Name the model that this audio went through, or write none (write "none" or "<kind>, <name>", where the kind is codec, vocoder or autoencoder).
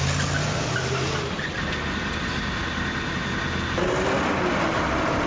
none